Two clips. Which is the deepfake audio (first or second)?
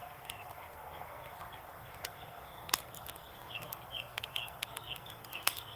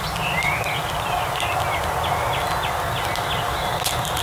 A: first